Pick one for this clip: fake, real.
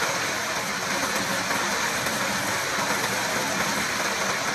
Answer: real